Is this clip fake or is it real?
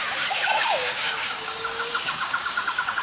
fake